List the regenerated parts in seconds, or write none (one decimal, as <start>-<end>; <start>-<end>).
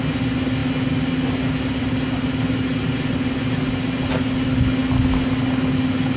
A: none